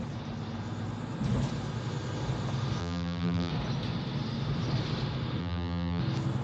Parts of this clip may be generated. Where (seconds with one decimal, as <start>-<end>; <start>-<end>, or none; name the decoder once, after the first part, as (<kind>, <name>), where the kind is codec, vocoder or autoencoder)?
2.8-3.5 (vocoder, BigVGAN v2); 5.4-6.0